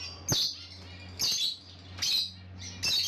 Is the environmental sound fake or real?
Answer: real